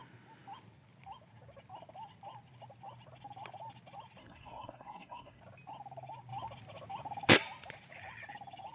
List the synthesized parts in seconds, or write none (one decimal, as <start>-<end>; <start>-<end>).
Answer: 4.2-5.4